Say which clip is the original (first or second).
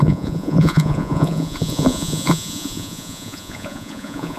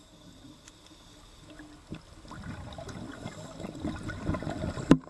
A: second